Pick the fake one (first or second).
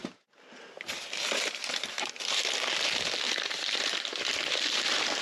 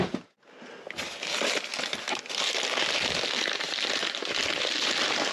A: first